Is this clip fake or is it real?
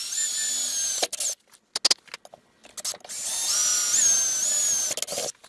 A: real